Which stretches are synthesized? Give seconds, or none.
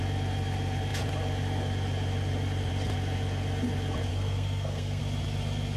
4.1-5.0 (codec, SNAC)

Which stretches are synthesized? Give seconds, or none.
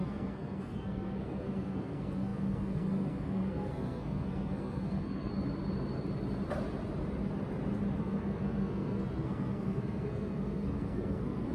0.0-5.3 (codec, SNAC); 8.0-11.5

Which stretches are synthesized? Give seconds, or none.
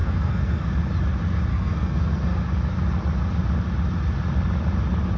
0.0-0.7 (codec, SNAC); 1.5-2.4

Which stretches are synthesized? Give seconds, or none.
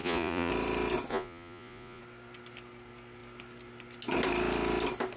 0.0-0.5 (vocoder, Vocos); 1.1-2.0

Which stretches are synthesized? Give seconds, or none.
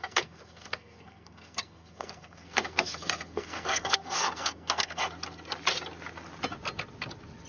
0.0-5.0 (codec, SNAC)